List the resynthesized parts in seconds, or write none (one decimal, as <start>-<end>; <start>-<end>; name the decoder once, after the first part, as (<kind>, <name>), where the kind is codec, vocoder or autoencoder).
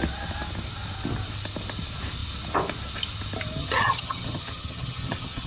3.6-5.5 (vocoder, HiFi-GAN)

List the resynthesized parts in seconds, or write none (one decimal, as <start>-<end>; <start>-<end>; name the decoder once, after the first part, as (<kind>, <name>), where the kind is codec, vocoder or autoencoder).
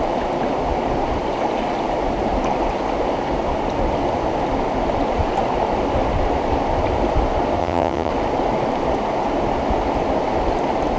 7.6-8.1 (vocoder, HiFi-GAN)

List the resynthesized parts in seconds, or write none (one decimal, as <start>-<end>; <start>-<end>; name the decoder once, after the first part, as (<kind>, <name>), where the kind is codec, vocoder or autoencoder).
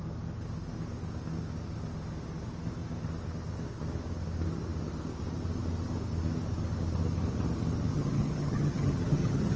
7.9-9.6 (vocoder, HiFi-GAN)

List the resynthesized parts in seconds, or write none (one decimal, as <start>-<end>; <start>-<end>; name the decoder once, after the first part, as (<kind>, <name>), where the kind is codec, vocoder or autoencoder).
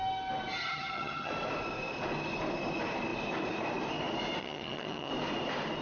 0.6-1.3 (vocoder, HiFi-GAN); 4.4-5.1